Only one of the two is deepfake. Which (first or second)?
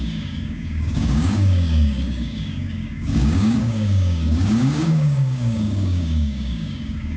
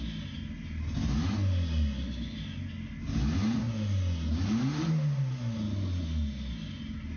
first